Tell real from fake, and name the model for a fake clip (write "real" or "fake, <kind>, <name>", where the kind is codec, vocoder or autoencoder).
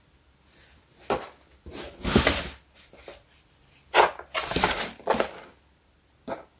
real